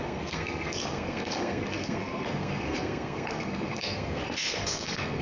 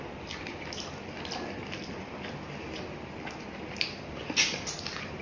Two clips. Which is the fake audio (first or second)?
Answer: first